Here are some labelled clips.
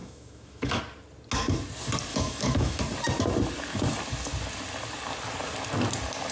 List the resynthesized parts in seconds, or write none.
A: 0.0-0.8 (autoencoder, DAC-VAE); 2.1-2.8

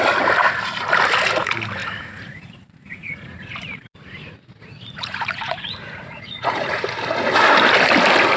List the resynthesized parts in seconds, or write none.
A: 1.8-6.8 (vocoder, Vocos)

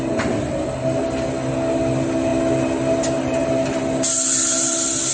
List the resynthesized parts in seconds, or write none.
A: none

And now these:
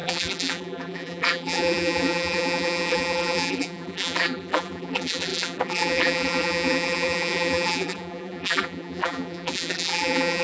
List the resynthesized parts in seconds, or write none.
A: 0.0-10.4 (vocoder, BigVGAN v2)

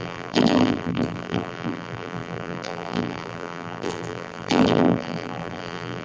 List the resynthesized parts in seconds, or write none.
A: 0.0-6.0 (vocoder, BigVGAN v2)

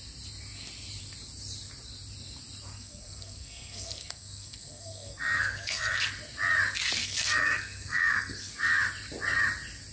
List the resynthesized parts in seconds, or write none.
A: 2.7-6.0 (codec, SNAC); 7.0-8.5

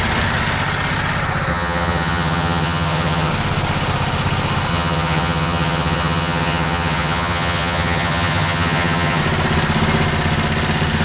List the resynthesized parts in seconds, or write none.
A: 1.5-3.3 (vocoder, HiFi-GAN); 4.7-9.2

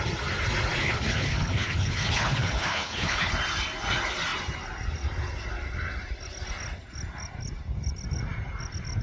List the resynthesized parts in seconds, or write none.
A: 0.8-3.3 (codec, HILCodec)